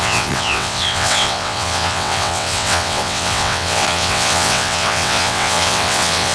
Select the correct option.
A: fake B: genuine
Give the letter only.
A